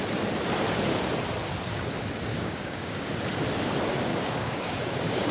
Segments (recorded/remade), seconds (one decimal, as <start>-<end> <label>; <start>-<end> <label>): 0.0-2.3 recorded; 2.3-3.1 remade; 3.1-4.1 recorded; 4.1-5.3 remade